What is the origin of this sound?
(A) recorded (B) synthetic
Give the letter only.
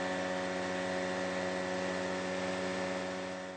A